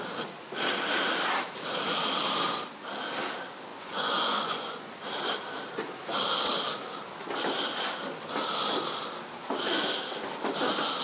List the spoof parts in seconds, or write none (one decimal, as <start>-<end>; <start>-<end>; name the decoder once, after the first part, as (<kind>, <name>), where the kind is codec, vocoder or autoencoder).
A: 3.7-4.9 (vocoder, Vocos)